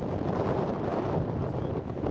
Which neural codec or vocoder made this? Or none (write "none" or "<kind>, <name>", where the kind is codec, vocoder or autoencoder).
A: none